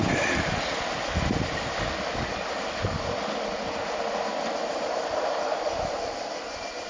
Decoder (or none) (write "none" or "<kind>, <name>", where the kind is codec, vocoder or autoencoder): none